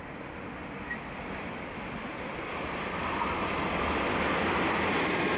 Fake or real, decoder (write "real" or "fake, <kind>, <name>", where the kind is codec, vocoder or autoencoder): real